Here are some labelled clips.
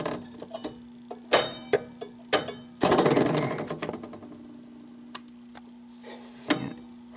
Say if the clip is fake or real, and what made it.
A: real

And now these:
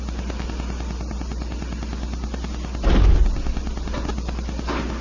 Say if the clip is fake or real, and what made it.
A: real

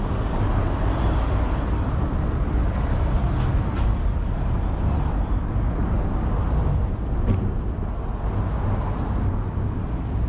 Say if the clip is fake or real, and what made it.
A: real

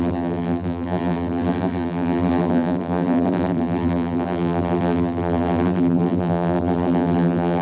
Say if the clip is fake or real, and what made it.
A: fake, vocoder, BigVGAN v2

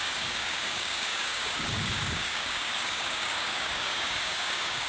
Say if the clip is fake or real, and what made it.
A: fake, codec, DAC